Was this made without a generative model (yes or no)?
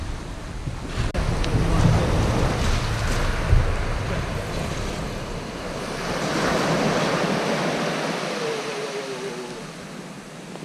yes